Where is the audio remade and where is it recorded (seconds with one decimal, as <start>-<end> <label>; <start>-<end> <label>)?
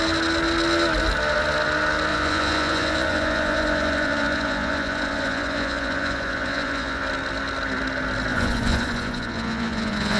0.0-2.1 recorded; 2.1-7.0 remade; 7.0-8.3 recorded; 8.3-10.2 remade